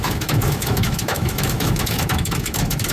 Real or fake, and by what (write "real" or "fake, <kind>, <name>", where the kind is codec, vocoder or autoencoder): fake, autoencoder, DAC-VAE